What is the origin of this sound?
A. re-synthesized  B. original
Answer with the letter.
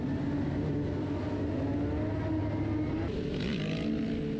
B